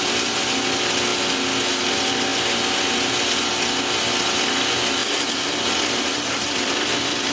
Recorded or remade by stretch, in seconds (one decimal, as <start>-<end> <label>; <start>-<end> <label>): 0.0-7.3 recorded